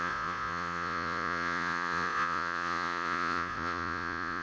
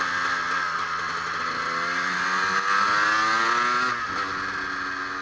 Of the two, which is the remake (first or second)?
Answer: first